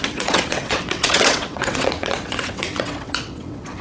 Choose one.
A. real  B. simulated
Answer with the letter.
B